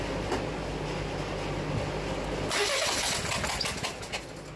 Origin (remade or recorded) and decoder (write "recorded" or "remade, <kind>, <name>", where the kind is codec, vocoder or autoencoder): recorded